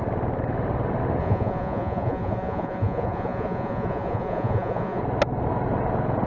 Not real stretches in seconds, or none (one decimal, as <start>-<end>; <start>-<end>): 1.2-5.0